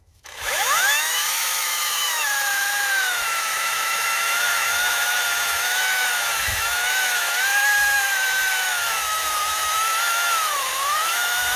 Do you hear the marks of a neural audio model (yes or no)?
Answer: yes